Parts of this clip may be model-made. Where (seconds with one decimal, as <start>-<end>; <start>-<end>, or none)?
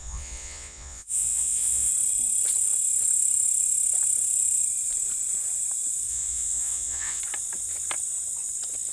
0.0-1.9; 6.1-7.2